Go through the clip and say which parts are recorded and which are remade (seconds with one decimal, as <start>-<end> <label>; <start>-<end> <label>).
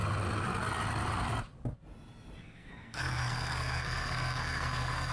0.0-2.4 recorded; 2.4-5.1 remade